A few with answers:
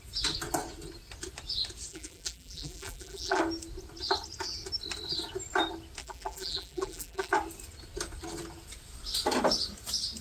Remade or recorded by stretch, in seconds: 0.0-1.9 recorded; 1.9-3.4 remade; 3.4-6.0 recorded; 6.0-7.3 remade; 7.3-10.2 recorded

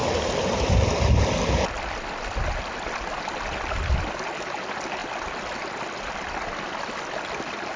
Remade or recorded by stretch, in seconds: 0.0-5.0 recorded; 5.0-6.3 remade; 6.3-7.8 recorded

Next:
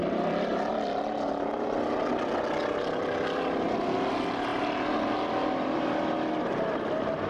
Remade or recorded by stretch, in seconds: 0.0-0.7 remade; 0.7-7.3 recorded

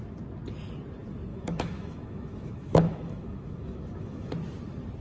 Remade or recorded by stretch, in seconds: 0.0-1.3 recorded; 1.3-4.3 remade; 4.3-5.0 recorded